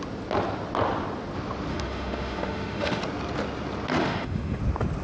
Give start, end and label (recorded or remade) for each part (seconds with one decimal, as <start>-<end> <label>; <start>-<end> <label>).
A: 0.0-1.7 recorded; 1.7-3.0 remade; 3.0-4.0 recorded; 4.0-4.6 remade; 4.6-5.0 recorded